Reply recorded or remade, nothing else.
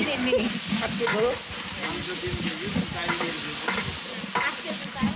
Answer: recorded